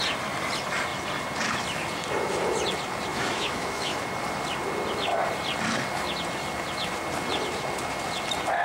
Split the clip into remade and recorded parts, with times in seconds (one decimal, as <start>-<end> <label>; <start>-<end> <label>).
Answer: 0.0-3.1 recorded; 3.1-4.0 remade; 4.0-8.6 recorded